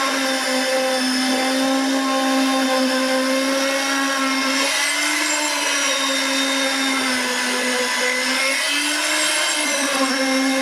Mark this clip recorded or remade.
recorded